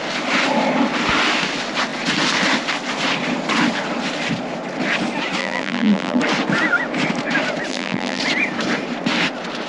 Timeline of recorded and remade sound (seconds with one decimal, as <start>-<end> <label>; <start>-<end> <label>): 0.0-5.4 recorded; 5.4-6.2 remade; 6.2-7.7 recorded; 7.7-8.2 remade; 8.2-9.7 recorded